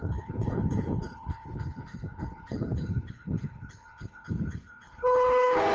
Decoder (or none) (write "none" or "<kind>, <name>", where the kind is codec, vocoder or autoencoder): codec, HILCodec